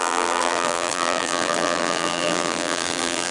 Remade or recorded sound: remade